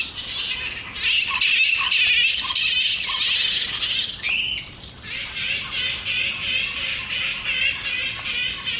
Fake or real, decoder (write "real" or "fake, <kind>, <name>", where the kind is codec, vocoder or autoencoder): real